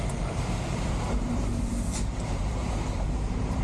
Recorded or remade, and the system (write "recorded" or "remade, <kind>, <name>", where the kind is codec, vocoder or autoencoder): remade, vocoder, BigVGAN v2